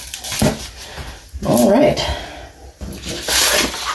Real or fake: real